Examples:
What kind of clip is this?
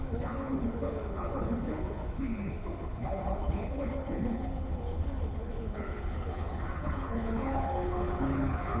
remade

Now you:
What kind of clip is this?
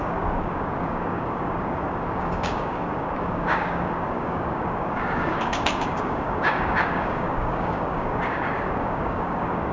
remade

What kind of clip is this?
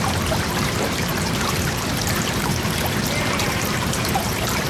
remade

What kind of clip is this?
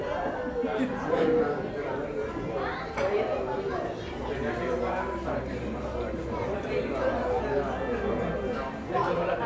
recorded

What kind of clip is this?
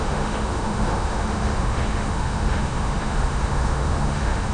remade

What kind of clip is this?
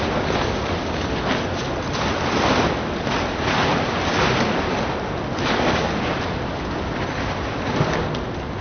recorded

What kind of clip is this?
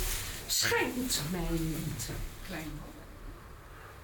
recorded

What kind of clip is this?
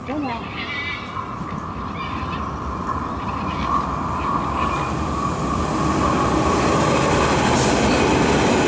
recorded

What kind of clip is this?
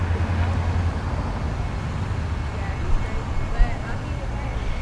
recorded